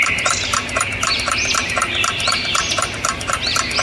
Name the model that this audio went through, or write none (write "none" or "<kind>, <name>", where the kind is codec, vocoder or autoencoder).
vocoder, BigVGAN v2